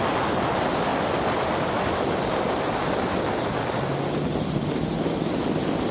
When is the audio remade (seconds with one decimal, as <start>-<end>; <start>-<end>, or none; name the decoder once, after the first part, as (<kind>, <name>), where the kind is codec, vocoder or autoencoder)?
none